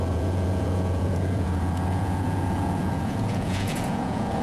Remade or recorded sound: remade